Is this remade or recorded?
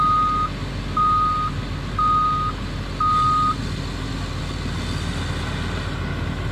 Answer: recorded